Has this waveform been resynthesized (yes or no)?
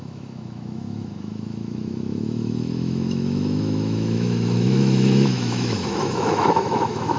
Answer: yes